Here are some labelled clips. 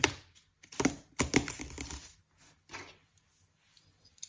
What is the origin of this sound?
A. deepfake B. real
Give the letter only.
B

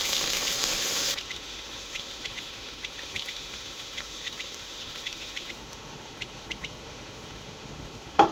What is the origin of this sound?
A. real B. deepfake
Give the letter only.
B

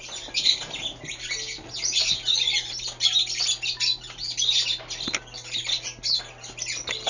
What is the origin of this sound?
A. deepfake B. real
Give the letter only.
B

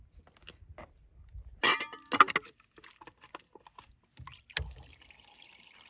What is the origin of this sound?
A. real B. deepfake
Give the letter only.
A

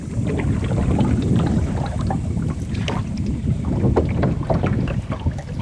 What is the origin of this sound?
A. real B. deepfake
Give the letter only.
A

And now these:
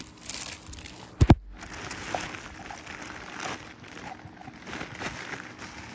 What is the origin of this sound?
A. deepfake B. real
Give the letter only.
B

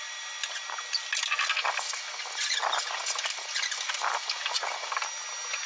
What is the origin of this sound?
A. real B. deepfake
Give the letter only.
A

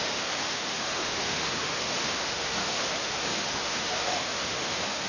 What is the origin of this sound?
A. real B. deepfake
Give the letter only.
B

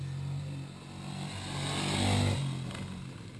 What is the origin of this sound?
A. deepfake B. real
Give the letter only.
B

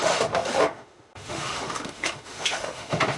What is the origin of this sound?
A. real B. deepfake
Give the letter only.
B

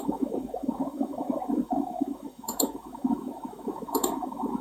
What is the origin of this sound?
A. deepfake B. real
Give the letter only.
A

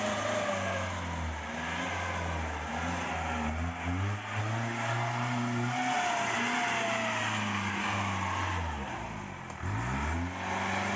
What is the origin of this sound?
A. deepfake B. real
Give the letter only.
B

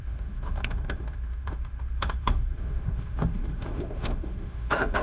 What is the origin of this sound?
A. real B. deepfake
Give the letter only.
B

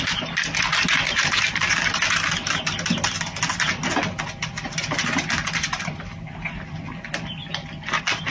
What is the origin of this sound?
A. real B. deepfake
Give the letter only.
A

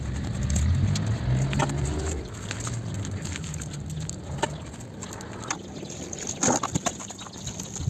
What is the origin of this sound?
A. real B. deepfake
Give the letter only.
A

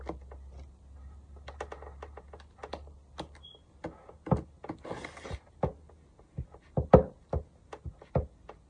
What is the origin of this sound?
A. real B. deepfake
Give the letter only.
A